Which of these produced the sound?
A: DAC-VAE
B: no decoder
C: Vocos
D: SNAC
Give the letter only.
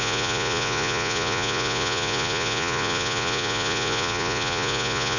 C